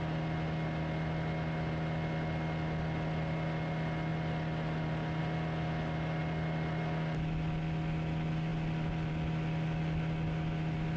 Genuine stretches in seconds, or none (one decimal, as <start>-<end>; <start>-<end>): 0.0-11.0